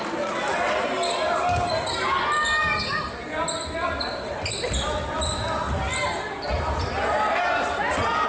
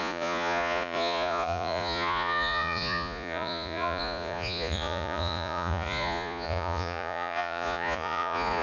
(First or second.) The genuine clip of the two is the first